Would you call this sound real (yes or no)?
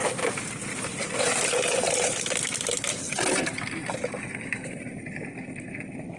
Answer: yes